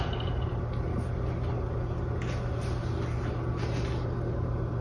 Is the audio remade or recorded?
recorded